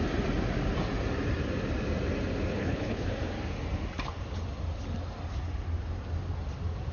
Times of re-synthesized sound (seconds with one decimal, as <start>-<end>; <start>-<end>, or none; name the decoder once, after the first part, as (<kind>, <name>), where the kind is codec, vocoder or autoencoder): 2.5-3.1 (codec, HILCodec)